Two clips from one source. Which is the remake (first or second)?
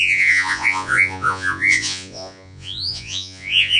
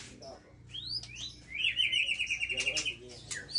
first